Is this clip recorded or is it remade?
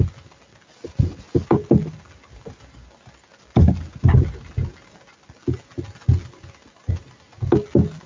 recorded